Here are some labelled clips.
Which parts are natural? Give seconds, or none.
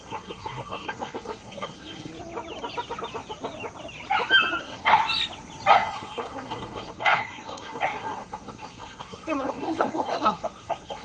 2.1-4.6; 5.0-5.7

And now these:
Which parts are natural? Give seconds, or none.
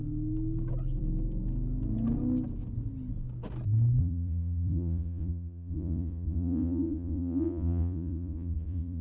0.0-4.0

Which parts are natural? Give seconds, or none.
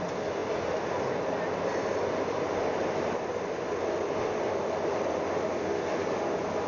0.0-6.7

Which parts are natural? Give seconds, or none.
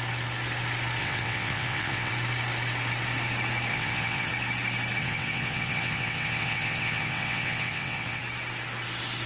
0.0-1.0; 2.1-3.7; 4.3-5.0; 8.2-9.3